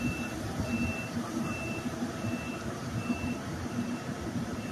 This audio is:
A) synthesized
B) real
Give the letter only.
A